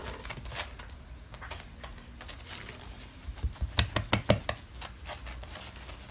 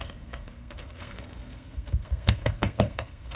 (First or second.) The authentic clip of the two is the first